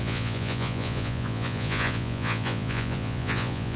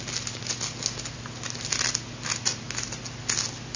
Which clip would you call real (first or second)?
second